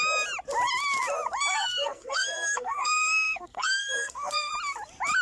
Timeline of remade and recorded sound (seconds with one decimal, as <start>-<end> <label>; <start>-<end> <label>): 0.0-1.5 recorded; 1.5-4.5 remade; 4.5-5.2 recorded